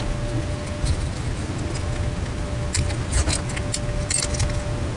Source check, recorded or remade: recorded